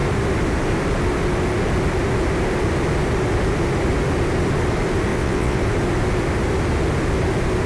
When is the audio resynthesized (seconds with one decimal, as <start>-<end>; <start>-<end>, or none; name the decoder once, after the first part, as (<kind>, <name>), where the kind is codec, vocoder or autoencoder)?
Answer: 5.1-5.6 (vocoder, WaveNeXt)